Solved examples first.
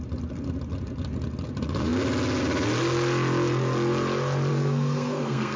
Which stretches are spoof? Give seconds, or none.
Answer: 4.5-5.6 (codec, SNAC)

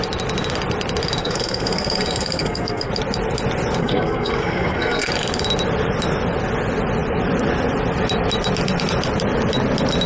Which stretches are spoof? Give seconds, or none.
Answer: 1.2-2.9 (codec, SNAC); 3.8-5.1

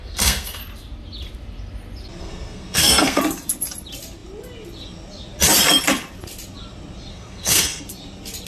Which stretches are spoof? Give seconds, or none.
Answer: 0.0-0.6 (codec, SNAC); 2.2-3.2; 7.1-7.8

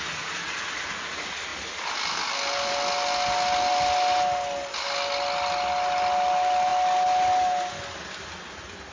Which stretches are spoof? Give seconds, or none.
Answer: none

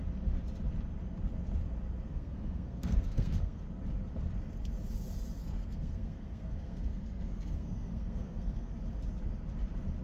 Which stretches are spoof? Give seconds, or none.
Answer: 2.1-3.6 (codec, SNAC); 5.4-8.7

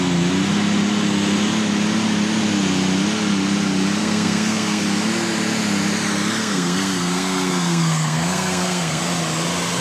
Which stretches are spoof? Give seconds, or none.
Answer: 4.0-4.8 (codec, SNAC); 6.4-9.0